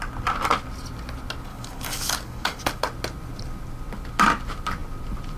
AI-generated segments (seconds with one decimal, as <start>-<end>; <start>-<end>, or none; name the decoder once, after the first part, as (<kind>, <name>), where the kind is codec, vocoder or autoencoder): 1.5-2.8 (codec, DAC)